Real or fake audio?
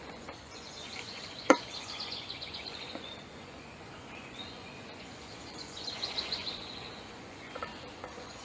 fake